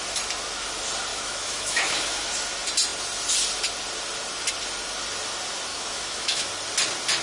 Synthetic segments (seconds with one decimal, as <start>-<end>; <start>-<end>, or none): 1.1-2.3; 5.7-6.5